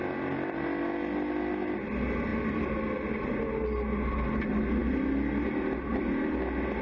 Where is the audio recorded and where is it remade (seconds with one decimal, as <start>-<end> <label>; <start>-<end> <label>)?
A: 0.0-6.8 recorded